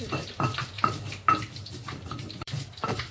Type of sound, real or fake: fake